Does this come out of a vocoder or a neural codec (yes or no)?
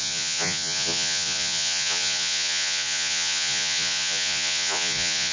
yes